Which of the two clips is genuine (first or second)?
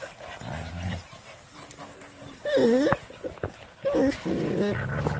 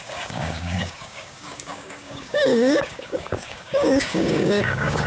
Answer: first